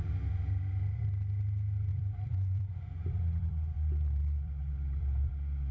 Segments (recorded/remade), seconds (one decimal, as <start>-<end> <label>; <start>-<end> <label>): 0.0-1.9 recorded; 1.9-5.3 remade; 5.3-5.7 recorded